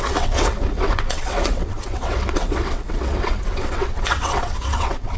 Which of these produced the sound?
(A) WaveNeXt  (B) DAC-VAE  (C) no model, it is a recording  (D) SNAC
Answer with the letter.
A